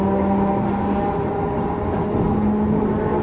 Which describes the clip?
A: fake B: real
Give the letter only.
B